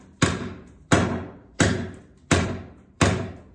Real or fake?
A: fake